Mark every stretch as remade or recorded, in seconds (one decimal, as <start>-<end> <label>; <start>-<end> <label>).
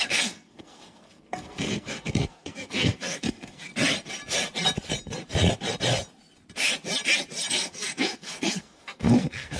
0.0-3.7 remade; 3.7-7.5 recorded; 7.5-9.6 remade